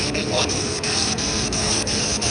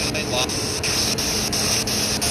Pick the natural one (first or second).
second